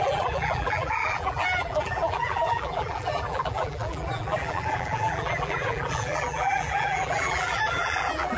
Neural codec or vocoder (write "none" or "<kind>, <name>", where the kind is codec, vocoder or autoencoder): vocoder, BigVGAN v2